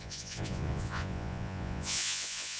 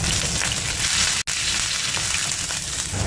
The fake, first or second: first